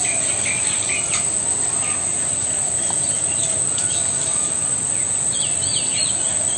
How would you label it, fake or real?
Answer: real